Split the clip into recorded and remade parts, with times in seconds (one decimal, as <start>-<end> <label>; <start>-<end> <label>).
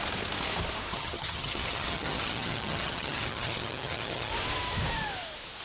0.0-0.9 recorded; 0.9-4.3 remade; 4.3-5.6 recorded